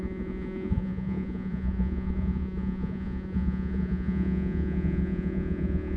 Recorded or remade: remade